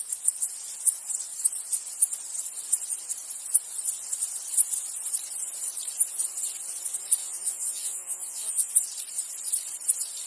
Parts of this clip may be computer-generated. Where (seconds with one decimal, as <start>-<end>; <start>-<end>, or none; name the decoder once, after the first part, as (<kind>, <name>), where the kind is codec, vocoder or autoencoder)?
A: 7.2-8.7 (vocoder, Vocos)